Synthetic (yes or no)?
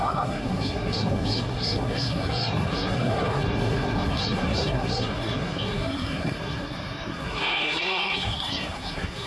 yes